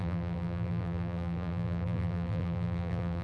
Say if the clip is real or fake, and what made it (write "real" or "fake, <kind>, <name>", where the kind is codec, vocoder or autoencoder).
fake, vocoder, BigVGAN v2